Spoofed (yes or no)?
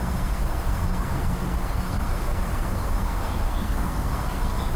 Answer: yes